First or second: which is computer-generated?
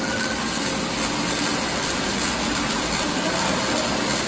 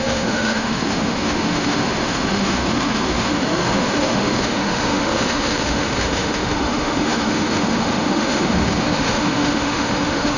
second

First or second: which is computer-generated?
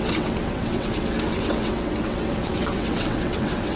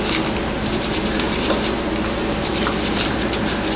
first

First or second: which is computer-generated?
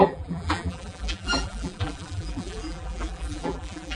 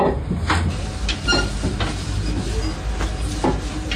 first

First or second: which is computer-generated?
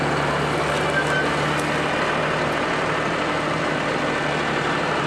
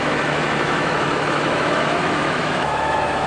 second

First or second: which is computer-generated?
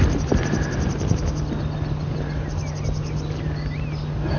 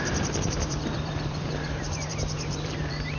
second